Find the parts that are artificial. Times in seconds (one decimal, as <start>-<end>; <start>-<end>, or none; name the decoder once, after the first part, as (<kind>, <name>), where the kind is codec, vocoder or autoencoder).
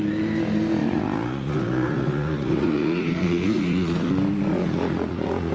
0.8-4.1 (vocoder, Vocos); 4.5-5.5